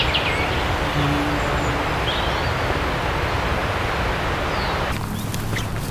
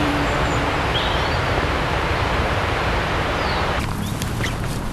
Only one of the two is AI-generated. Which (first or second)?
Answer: second